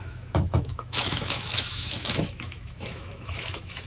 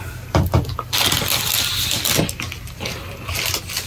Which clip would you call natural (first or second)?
second